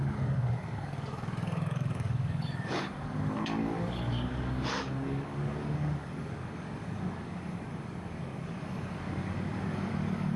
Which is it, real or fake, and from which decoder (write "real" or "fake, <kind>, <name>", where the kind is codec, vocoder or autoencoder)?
fake, codec, DAC